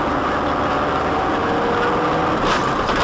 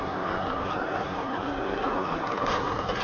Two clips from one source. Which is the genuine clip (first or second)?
first